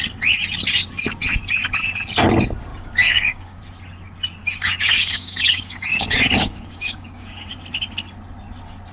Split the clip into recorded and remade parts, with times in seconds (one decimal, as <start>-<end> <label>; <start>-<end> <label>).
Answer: 0.0-2.7 recorded; 2.7-3.6 remade; 3.6-4.4 recorded; 4.4-7.5 remade; 7.5-8.9 recorded